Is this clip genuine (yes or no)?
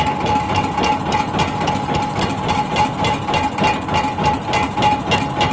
yes